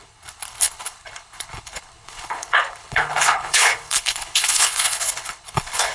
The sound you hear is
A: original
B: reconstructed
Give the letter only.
B